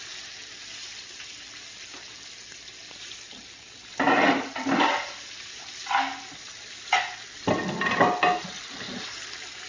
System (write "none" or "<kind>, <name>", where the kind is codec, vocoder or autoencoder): none